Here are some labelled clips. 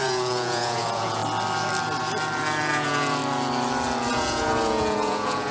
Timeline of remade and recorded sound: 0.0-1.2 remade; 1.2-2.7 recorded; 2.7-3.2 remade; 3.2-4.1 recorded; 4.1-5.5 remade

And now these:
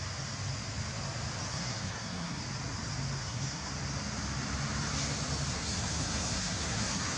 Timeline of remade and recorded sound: 0.0-1.5 recorded; 1.5-2.4 remade; 2.4-3.2 recorded; 3.2-3.7 remade; 3.7-5.5 recorded; 5.5-7.2 remade

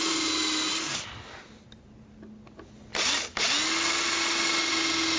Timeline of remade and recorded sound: 0.0-5.2 recorded

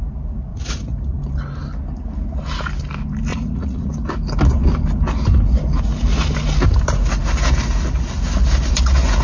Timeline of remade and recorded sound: 0.0-0.5 recorded; 0.5-1.2 remade; 1.2-3.3 recorded; 3.3-3.9 remade; 3.9-9.2 recorded

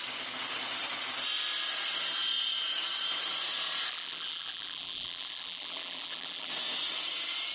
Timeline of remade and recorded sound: 0.0-3.9 recorded; 3.9-6.5 remade; 6.5-7.5 recorded

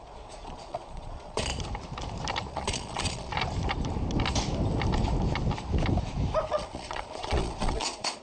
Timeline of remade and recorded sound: 0.0-1.5 remade; 1.5-2.5 recorded; 2.5-3.3 remade; 3.3-6.5 recorded; 6.5-8.2 remade

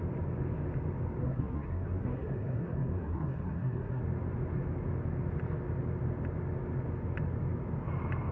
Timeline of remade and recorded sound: 0.0-1.2 recorded; 1.2-4.0 remade; 4.0-8.3 recorded